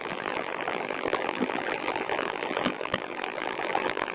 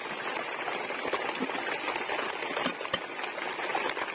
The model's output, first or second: first